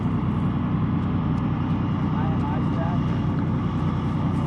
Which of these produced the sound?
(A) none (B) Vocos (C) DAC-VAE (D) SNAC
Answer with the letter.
A